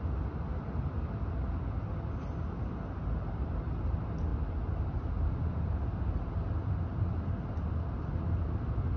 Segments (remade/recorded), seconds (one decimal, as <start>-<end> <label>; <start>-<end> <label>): 0.0-9.0 recorded